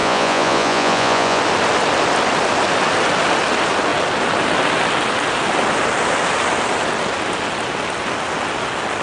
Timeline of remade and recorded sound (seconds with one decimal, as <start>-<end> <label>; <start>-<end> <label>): 0.0-1.4 remade; 1.4-9.0 recorded